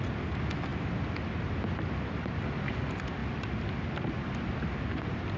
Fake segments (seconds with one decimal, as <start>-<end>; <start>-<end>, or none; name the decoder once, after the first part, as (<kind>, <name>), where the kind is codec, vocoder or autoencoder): none